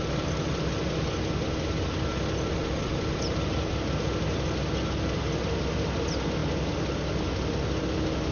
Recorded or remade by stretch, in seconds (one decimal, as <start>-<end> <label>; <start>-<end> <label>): 0.0-8.3 recorded